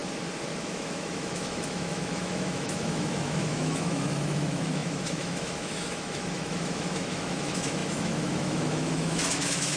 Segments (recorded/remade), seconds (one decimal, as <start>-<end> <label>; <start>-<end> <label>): 0.0-0.6 recorded; 0.6-9.8 remade